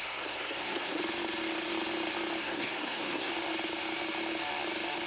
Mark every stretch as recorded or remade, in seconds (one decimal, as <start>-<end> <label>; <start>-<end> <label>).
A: 0.0-1.0 remade; 1.0-2.4 recorded; 2.4-3.3 remade; 3.3-5.1 recorded